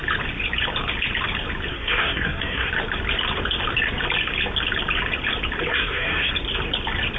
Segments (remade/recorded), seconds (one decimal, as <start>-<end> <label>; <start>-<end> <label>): 0.0-1.7 recorded; 1.7-2.7 remade; 2.7-5.7 recorded; 5.7-6.3 remade; 6.3-7.2 recorded